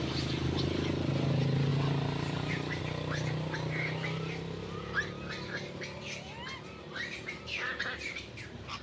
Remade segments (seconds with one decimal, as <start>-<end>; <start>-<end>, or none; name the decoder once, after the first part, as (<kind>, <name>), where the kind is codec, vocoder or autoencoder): none